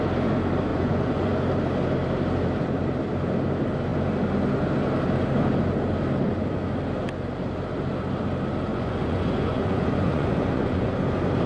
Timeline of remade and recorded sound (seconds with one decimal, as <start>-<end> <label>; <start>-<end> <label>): 0.0-0.7 recorded; 0.7-1.3 remade; 1.3-8.7 recorded; 8.7-11.0 remade; 11.0-11.5 recorded